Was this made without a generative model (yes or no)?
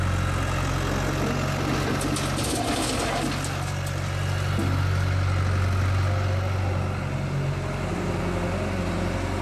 yes